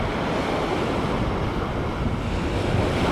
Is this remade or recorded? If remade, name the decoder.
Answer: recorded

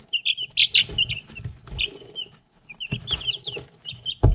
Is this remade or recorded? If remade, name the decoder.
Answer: recorded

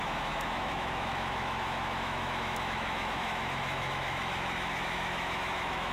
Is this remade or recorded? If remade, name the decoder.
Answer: remade, autoencoder, DAC-VAE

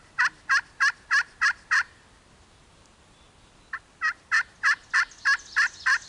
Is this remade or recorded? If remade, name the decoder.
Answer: recorded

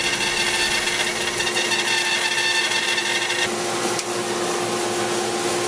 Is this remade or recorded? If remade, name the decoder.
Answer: recorded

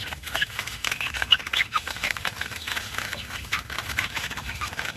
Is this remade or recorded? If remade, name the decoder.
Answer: remade, autoencoder, DAC-VAE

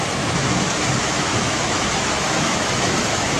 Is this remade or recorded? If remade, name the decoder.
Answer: remade, autoencoder, DAC-VAE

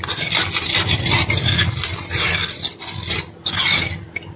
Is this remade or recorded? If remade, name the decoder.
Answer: recorded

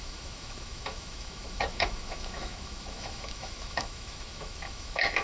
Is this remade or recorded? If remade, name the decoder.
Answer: remade, autoencoder, DAC-VAE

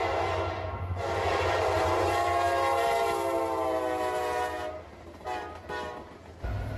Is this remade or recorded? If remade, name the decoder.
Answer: recorded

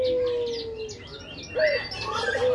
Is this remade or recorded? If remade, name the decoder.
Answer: recorded